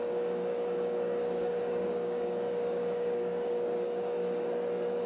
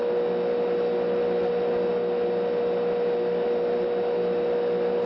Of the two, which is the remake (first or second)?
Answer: first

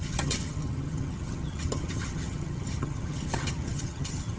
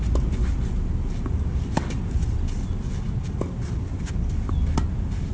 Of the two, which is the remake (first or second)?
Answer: first